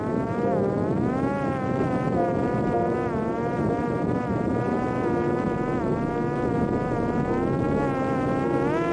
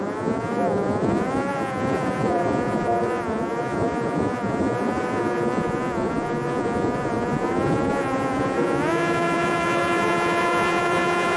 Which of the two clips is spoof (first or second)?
second